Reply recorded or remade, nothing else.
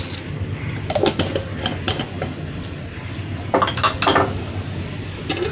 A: recorded